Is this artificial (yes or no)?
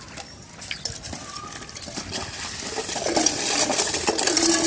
no